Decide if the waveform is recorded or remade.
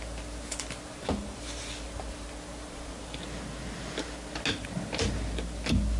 recorded